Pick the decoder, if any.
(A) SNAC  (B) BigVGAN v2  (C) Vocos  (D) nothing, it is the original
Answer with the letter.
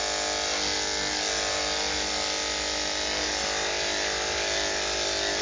D